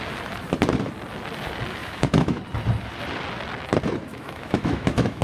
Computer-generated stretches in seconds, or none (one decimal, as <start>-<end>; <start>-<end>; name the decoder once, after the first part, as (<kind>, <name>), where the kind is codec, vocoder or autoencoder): 1.8-2.4 (autoencoder, DAC-VAE); 4.1-5.2